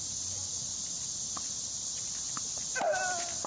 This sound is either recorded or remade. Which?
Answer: recorded